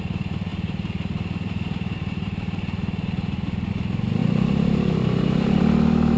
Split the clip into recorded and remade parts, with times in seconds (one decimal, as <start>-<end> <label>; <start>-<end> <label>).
0.0-0.5 recorded; 0.5-3.7 remade; 3.7-4.2 recorded; 4.2-5.6 remade; 5.6-6.2 recorded